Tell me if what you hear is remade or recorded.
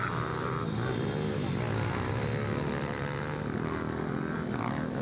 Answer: recorded